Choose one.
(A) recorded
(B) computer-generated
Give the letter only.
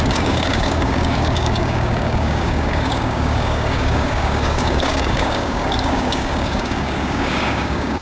B